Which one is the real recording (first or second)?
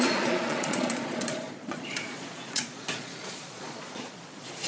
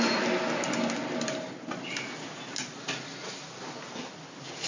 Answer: second